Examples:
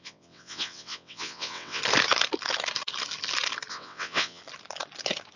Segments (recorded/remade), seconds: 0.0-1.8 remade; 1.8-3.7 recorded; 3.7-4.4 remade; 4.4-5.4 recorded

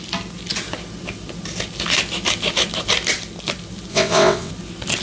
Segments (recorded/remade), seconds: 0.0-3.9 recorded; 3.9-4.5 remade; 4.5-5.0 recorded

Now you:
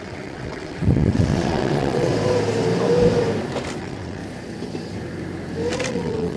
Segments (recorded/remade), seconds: 0.0-2.1 remade; 2.1-3.8 recorded; 3.8-4.2 remade; 4.2-5.9 recorded; 5.9-6.4 remade